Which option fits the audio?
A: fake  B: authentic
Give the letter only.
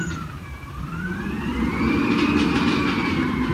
A